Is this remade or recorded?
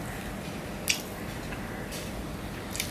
recorded